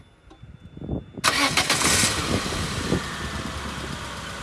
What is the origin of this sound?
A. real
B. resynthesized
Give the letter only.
A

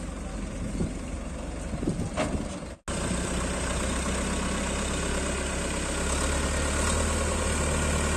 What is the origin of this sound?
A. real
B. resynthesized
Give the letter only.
A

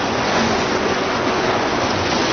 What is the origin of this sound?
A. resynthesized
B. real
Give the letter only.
A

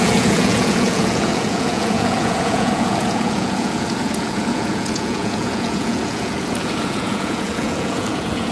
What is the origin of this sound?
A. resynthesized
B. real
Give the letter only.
A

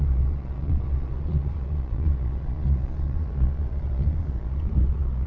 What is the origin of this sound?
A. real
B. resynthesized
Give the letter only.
B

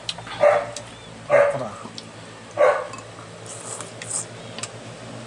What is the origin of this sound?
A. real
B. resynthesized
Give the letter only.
A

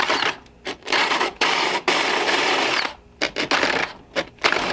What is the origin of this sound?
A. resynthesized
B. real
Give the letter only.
B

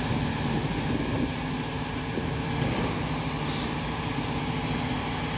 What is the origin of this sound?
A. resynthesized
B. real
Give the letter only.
B